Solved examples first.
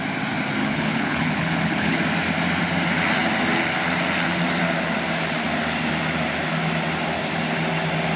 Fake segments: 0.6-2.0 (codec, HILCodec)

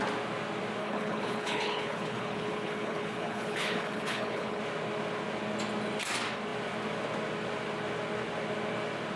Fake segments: 0.8-4.6 (codec, HILCodec)

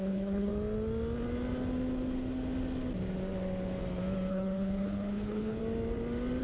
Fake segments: 0.0-0.5 (codec, HILCodec); 4.3-5.6

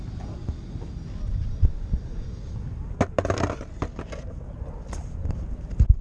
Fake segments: none

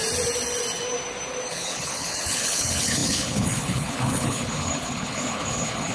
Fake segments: 1.5-5.9 (codec, HILCodec)

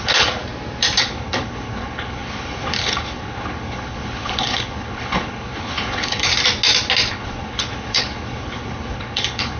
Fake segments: 0.0-0.4 (codec, HILCodec); 1.0-6.3; 7.1-9.6